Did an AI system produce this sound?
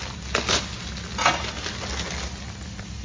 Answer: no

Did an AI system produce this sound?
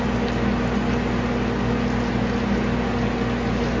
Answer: no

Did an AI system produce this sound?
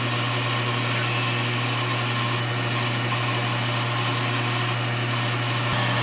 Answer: no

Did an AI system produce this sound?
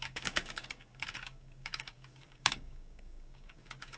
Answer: yes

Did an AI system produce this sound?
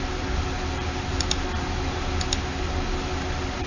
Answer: no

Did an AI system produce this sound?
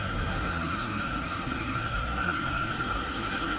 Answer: yes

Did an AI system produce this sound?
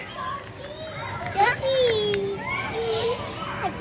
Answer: no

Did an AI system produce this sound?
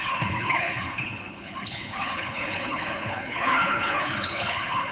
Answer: yes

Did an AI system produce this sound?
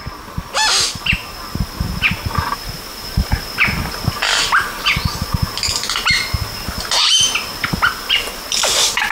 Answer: no